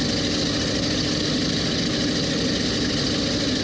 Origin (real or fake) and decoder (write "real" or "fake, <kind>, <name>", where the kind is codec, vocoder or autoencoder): real